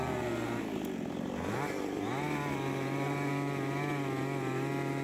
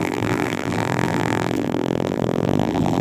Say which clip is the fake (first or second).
second